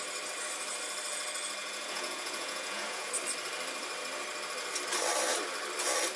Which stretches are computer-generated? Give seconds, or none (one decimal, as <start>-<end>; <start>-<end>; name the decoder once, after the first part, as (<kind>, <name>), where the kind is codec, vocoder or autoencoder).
1.6-3.1 (vocoder, Vocos)